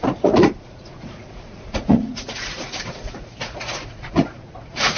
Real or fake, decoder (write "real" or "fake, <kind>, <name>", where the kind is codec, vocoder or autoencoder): fake, vocoder, Vocos